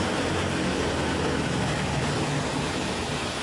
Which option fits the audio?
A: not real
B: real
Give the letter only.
B